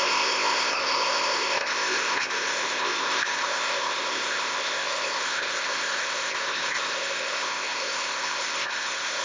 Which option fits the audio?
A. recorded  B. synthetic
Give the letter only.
B